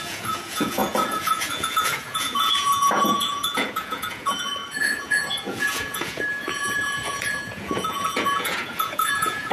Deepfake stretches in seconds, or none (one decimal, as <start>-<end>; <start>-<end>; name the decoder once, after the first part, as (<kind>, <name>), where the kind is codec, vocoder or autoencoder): 0.0-9.5 (vocoder, Vocos)